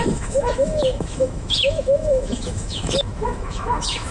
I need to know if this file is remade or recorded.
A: remade